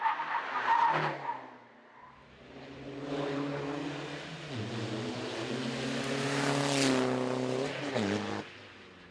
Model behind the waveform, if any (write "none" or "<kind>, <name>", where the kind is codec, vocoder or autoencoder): none